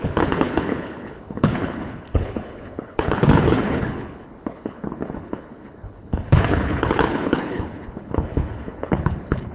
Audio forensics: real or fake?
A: fake